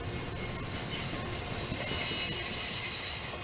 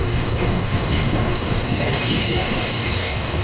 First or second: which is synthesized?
second